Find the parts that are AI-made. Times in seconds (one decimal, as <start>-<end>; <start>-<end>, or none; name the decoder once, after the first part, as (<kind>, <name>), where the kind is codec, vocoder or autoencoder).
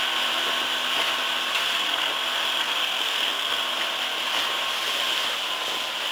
1.5-2.1 (codec, SNAC); 2.6-3.6